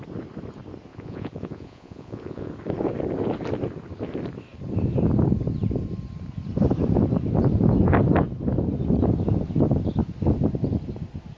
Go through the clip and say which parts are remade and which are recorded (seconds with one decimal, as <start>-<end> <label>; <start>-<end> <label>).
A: 0.0-0.9 recorded; 0.9-2.5 remade; 2.5-11.4 recorded